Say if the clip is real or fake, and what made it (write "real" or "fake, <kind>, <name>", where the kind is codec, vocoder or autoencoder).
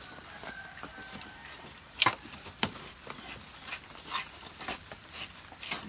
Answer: real